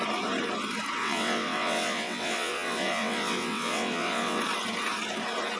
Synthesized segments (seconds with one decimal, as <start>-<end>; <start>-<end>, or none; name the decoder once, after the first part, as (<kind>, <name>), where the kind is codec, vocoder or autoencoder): 1.0-4.4 (vocoder, WaveNeXt)